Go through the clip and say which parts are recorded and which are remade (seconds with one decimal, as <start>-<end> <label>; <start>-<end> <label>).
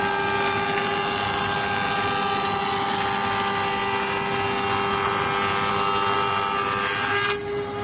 0.0-7.8 recorded